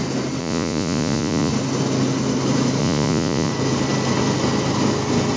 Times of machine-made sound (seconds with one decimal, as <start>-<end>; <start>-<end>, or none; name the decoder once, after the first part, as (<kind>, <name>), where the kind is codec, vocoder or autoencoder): 0.4-1.5 (vocoder, Vocos); 2.8-3.5